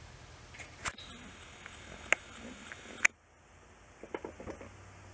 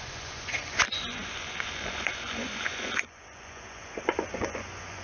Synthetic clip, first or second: second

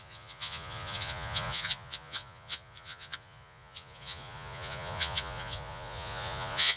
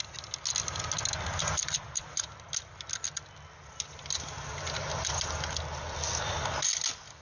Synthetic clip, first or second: first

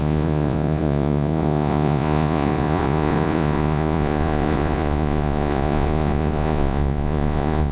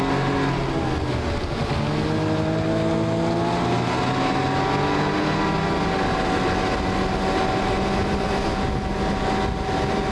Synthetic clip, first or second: first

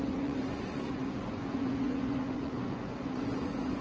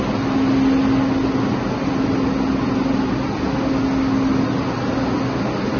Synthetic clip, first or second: first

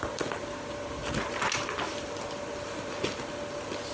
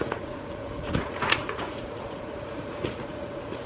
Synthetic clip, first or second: second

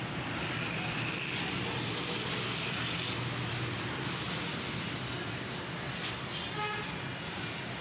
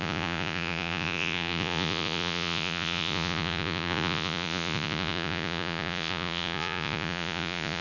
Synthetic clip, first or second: second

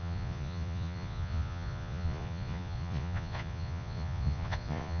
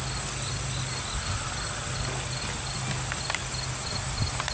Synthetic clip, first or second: first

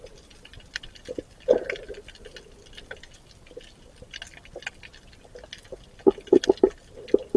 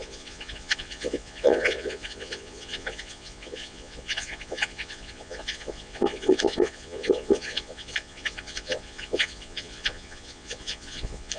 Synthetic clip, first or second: second